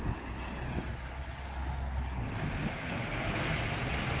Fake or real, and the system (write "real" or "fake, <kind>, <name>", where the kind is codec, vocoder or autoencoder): real